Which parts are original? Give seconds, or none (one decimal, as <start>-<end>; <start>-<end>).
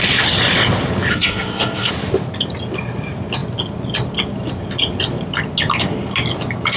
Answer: 0.0-1.1; 1.9-6.8